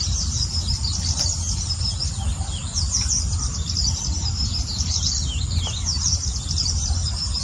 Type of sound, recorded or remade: recorded